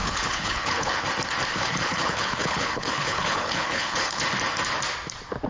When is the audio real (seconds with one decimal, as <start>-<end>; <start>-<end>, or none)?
1.0-1.5; 4.2-5.5